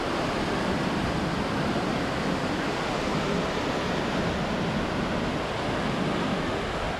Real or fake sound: real